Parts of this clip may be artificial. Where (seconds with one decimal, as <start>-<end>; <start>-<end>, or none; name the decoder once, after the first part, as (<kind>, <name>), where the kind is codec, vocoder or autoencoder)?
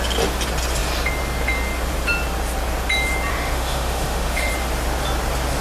3.3-4.5 (autoencoder, DAC-VAE)